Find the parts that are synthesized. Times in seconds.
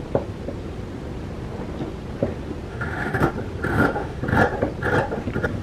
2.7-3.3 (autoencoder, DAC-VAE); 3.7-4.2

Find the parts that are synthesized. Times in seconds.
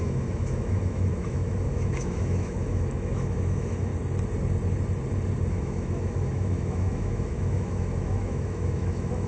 0.0-3.9 (autoencoder, DAC-VAE); 5.5-9.3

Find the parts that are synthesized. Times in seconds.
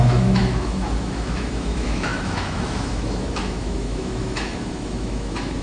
0.0-5.6 (autoencoder, DAC-VAE)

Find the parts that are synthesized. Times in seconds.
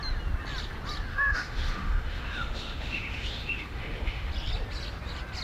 1.1-4.3 (autoencoder, DAC-VAE)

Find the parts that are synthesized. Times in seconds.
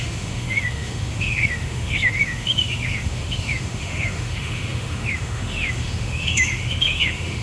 0.0-7.4 (autoencoder, DAC-VAE)